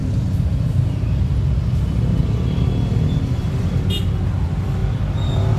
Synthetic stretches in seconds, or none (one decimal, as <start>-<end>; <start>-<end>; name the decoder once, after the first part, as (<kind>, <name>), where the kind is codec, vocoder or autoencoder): none